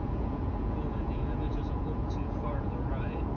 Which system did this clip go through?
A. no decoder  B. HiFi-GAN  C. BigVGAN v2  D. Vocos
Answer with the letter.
D